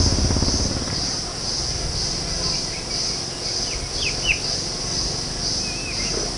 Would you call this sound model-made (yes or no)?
no